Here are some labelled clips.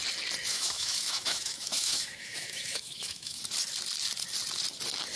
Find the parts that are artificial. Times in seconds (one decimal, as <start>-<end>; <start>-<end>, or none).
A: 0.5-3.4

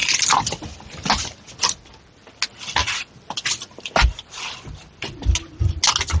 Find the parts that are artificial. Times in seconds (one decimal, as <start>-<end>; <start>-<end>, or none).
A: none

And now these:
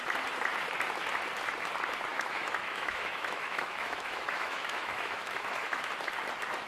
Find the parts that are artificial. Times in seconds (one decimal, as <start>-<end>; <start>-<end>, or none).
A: 2.1-5.9

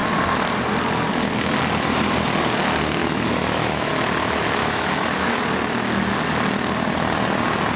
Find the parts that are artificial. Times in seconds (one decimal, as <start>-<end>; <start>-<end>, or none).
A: 3.0-3.9; 4.6-5.4

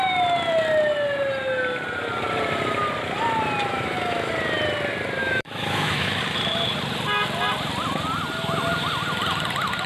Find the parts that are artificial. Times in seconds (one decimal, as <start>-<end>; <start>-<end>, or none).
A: 3.7-4.3; 5.2-6.2